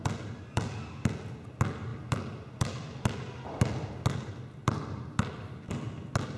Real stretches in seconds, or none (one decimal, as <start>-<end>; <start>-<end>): 0.0-6.4